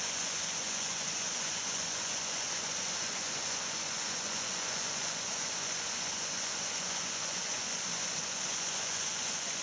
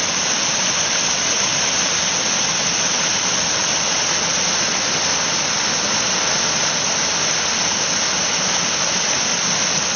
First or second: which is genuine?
second